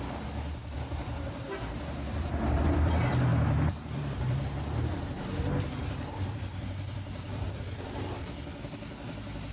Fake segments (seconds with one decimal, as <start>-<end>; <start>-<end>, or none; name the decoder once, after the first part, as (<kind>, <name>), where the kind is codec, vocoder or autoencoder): 0.6-2.8 (vocoder, BigVGAN v2); 3.3-8.2